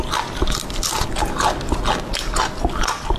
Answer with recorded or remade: recorded